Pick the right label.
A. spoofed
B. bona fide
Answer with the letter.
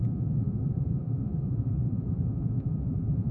A